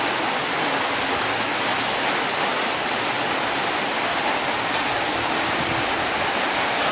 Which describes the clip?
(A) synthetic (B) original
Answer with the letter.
B